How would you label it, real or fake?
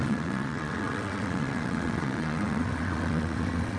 fake